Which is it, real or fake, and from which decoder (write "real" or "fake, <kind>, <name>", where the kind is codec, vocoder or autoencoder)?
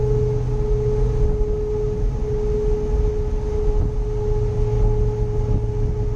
real